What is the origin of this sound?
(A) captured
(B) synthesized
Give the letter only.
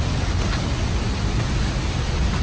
A